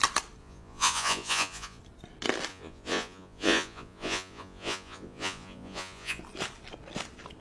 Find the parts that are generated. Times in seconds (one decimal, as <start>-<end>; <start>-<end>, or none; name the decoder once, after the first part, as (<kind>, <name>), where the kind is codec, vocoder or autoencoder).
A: 0.4-1.8 (vocoder, Vocos); 2.5-6.2